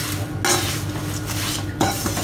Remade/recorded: recorded